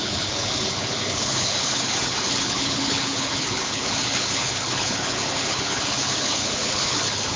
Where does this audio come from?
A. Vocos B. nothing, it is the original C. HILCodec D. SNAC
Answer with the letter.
C